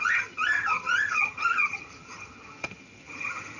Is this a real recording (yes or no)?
no